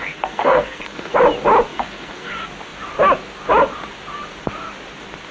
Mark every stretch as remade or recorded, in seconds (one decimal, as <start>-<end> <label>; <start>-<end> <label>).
0.0-1.2 remade; 1.2-1.7 recorded; 1.7-2.3 remade; 2.3-5.3 recorded